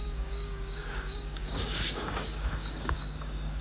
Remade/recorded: remade